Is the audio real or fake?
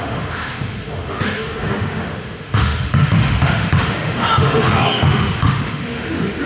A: fake